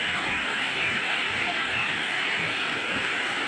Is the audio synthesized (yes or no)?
yes